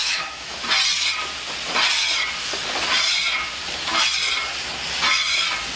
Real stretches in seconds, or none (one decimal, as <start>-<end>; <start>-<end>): 0.6-5.8